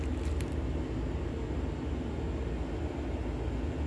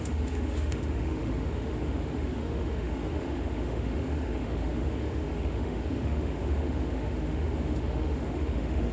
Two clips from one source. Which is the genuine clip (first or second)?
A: first